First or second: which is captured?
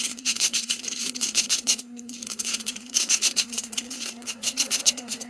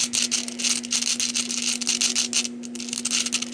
second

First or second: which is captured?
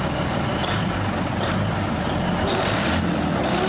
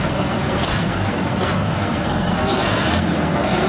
first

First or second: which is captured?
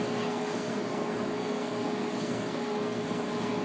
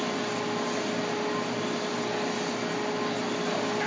second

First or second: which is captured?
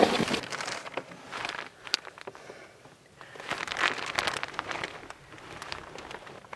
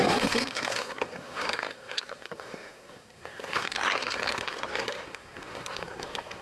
first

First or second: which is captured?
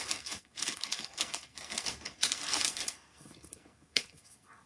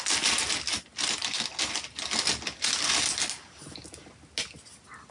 second